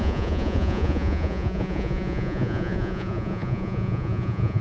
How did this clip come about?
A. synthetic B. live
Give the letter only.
A